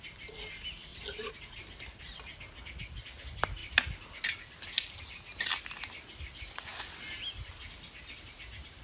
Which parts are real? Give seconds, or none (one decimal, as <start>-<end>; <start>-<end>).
0.0-0.9; 2.0-8.8